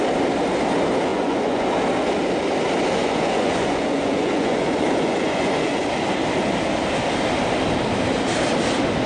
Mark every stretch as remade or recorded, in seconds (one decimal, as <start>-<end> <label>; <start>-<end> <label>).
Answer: 0.0-1.1 recorded; 1.1-1.7 remade; 1.7-3.0 recorded; 3.0-5.8 remade; 5.8-9.1 recorded